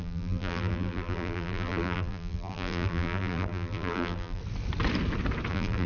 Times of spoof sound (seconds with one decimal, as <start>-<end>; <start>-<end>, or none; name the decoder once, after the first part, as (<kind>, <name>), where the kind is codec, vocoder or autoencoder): 0.0-4.4 (vocoder, BigVGAN v2); 5.5-5.9